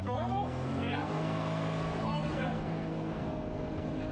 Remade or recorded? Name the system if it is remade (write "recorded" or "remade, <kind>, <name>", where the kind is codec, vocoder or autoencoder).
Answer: remade, codec, SNAC